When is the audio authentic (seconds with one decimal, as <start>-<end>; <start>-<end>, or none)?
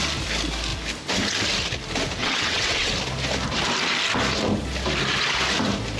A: 0.0-2.2; 2.9-6.0